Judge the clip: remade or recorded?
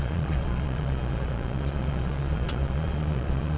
remade